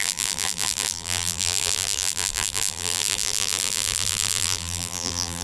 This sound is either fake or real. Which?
fake